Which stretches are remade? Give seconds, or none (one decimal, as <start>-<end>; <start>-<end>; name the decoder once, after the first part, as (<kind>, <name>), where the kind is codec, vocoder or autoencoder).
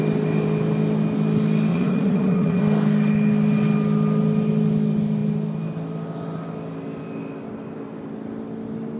1.7-2.6 (vocoder, Vocos)